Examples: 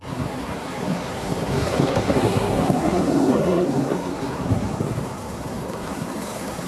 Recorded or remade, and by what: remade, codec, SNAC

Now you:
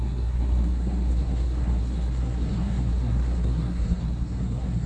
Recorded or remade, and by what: remade, codec, SNAC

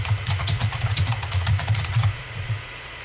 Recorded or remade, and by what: remade, vocoder, Vocos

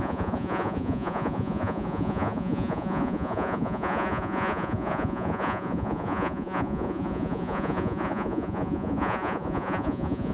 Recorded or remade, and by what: remade, vocoder, Vocos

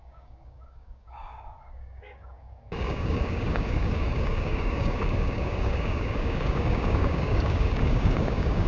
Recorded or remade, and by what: remade, codec, DAC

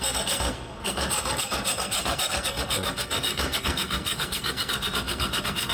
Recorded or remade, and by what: remade, codec, SNAC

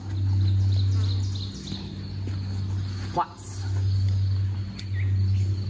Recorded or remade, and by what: recorded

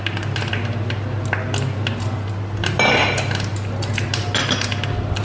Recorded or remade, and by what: recorded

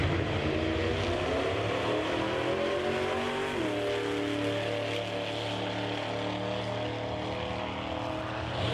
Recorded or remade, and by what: recorded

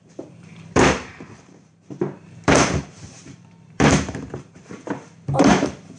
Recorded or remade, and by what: remade, vocoder, BigVGAN v2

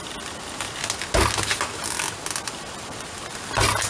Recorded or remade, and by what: recorded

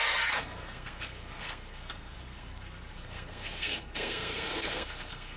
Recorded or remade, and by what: remade, codec, SNAC